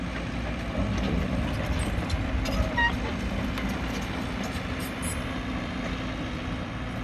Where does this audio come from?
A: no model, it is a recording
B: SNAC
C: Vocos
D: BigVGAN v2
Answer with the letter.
A